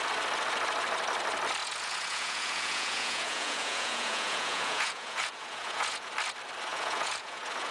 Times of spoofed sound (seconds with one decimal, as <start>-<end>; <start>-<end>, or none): 1.6-6.1; 6.7-7.7